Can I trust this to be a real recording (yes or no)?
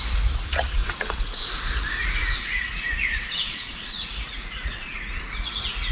no